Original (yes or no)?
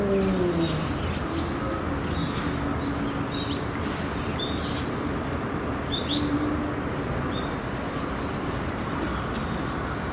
yes